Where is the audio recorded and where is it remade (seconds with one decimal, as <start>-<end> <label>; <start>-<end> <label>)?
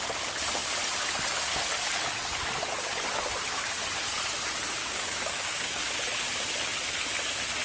0.0-4.8 recorded; 4.8-5.8 remade; 5.8-7.6 recorded